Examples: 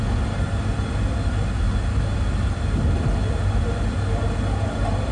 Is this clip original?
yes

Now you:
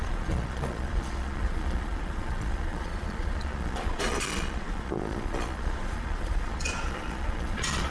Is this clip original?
no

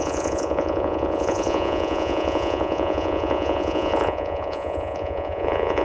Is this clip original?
no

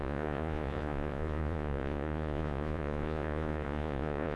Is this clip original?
no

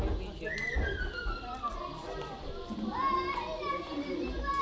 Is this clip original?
yes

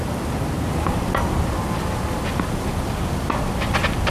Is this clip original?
yes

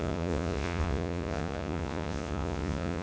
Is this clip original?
no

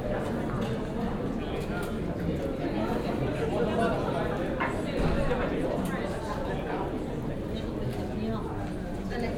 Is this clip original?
yes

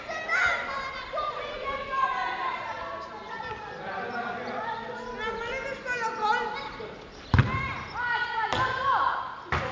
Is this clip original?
yes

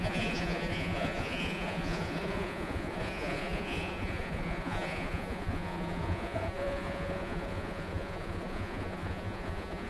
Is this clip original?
no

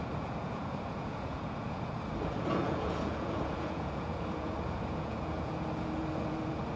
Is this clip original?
no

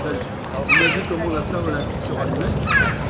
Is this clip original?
yes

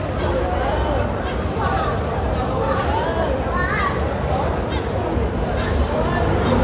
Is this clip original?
yes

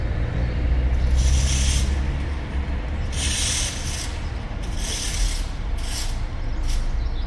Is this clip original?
yes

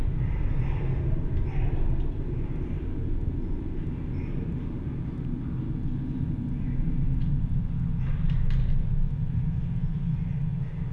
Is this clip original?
yes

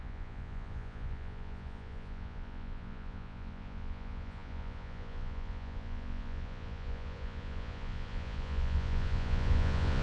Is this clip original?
no